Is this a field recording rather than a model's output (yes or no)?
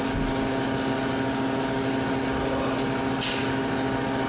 yes